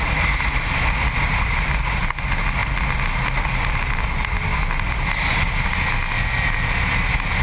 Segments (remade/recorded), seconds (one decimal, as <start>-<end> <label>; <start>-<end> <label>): 0.0-7.4 recorded